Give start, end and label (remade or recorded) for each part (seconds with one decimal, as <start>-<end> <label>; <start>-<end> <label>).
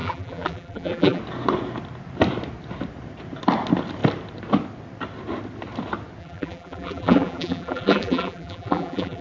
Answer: 0.0-1.2 remade; 1.2-6.2 recorded; 6.2-9.2 remade